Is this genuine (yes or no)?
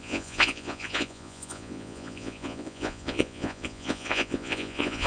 no